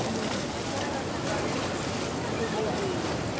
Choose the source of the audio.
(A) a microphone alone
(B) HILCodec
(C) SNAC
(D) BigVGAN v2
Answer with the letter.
A